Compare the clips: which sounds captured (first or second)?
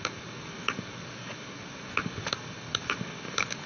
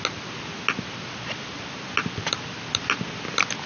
second